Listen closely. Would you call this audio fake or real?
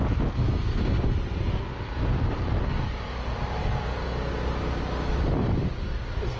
real